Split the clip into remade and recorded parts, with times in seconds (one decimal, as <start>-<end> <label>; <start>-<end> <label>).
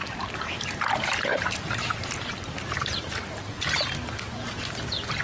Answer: 0.0-3.1 remade; 3.1-5.2 recorded